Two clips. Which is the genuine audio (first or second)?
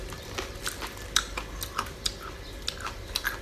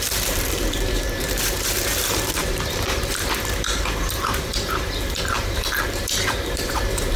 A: first